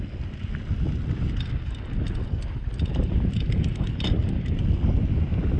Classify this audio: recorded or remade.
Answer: recorded